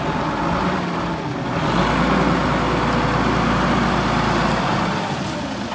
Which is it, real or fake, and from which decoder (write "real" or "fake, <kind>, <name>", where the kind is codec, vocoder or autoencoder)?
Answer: real